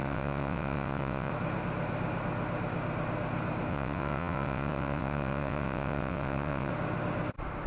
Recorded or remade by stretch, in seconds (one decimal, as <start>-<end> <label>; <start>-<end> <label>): 0.0-1.3 remade; 1.3-3.7 recorded; 3.7-6.7 remade; 6.7-7.7 recorded

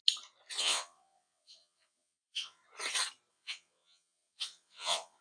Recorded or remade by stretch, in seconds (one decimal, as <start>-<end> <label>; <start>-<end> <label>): 0.0-0.6 recorded; 0.6-2.6 remade; 2.6-3.3 recorded; 3.3-5.2 remade

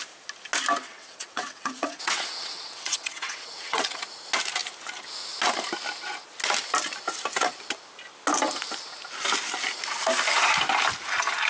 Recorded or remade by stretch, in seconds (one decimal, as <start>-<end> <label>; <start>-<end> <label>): 0.0-0.8 recorded; 0.8-4.0 remade; 4.0-11.5 recorded

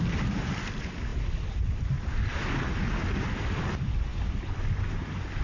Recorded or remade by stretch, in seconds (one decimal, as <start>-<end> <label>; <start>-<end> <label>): 0.0-5.4 recorded

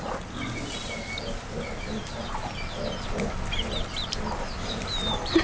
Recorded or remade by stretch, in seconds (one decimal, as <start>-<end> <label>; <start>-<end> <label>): 0.0-5.4 recorded

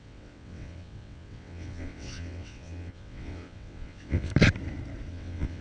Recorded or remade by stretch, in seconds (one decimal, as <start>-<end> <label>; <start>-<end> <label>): 0.0-4.3 remade; 4.3-5.1 recorded; 5.1-5.6 remade

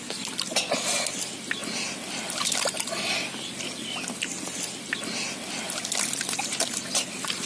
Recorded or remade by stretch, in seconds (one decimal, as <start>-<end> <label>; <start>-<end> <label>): 0.0-7.5 recorded